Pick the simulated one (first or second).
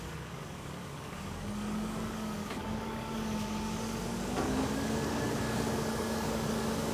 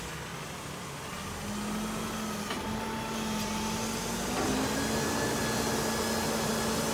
first